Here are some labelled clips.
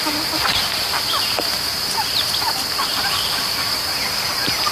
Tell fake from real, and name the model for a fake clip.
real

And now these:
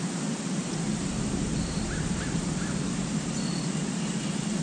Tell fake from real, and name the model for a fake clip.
real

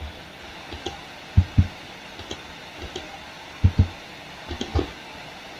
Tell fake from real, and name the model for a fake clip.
real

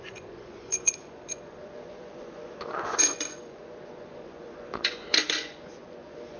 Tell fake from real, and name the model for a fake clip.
fake, vocoder, Vocos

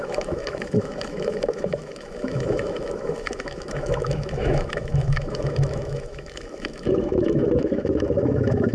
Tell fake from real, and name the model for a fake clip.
fake, autoencoder, DAC-VAE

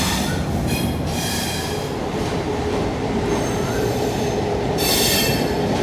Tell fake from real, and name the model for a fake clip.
fake, vocoder, BigVGAN v2